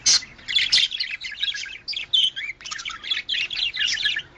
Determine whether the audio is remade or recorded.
recorded